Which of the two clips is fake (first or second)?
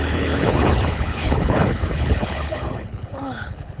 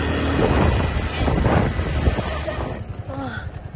first